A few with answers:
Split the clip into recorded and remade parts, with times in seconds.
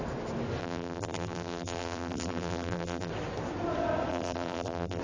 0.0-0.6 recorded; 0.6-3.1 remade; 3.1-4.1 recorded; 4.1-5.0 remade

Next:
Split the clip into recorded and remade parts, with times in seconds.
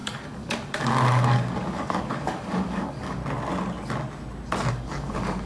0.0-3.2 remade; 3.2-4.7 recorded; 4.7-5.5 remade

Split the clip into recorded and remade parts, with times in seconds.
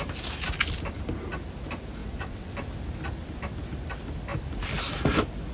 0.0-2.0 recorded; 2.0-2.5 remade; 2.5-5.5 recorded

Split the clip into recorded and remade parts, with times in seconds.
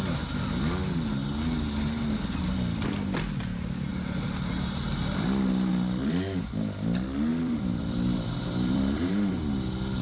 0.0-7.3 recorded; 7.3-9.4 remade; 9.4-10.0 recorded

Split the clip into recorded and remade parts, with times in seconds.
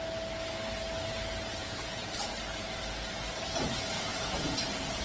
0.0-1.6 recorded; 1.6-2.3 remade; 2.3-4.1 recorded; 4.1-5.0 remade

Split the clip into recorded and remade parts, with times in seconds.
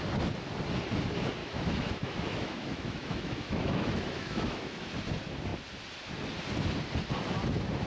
0.0-1.4 recorded; 1.4-4.9 remade; 4.9-7.9 recorded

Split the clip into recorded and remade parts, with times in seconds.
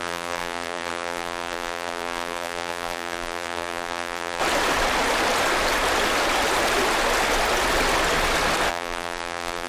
0.0-4.4 remade; 4.4-8.7 recorded; 8.7-9.7 remade